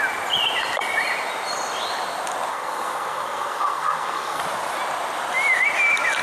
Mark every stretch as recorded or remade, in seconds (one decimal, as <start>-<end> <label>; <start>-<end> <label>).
0.0-2.5 recorded; 2.5-4.4 remade; 4.4-6.2 recorded